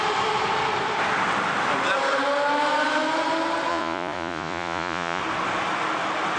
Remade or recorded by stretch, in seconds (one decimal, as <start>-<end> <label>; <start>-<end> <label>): 0.0-3.7 recorded; 3.7-5.2 remade; 5.2-6.4 recorded